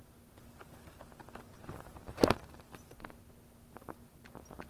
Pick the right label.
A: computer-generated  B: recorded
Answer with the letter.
B